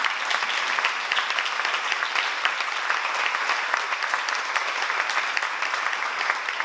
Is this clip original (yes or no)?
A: yes